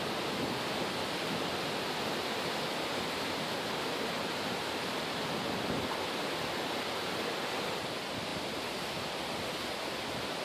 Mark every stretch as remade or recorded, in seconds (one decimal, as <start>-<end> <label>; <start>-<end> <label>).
0.0-10.4 recorded